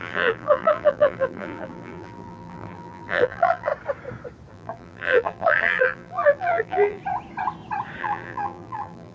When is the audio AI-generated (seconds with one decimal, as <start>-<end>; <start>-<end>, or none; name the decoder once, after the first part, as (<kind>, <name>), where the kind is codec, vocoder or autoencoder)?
0.0-3.7 (vocoder, BigVGAN v2); 4.5-7.0; 8.0-9.1

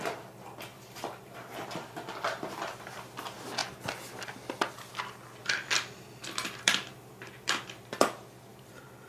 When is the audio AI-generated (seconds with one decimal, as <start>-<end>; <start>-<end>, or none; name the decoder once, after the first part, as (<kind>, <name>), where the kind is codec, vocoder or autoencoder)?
0.7-2.7 (vocoder, BigVGAN v2); 5.4-8.0; 8.5-9.1

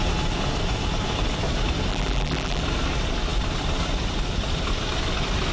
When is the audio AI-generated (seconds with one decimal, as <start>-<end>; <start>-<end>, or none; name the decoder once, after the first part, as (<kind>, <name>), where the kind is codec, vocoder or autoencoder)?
1.9-2.6 (vocoder, BigVGAN v2)